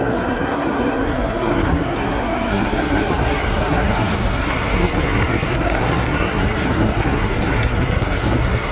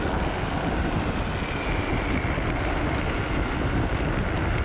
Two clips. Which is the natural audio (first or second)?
second